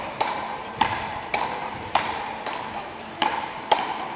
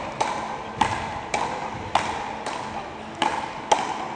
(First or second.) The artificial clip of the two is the first